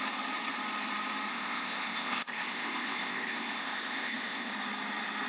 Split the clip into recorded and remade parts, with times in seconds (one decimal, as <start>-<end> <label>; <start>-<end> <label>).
0.0-1.3 recorded; 1.3-4.5 remade; 4.5-5.3 recorded